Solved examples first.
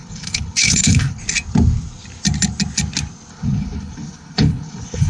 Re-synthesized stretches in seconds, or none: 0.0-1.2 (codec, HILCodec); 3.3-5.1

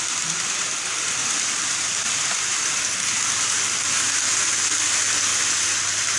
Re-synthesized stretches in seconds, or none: 1.2-2.8 (vocoder, BigVGAN v2)

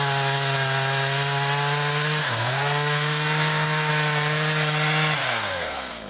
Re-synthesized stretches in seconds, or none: 2.2-3.9 (codec, SNAC); 5.2-6.1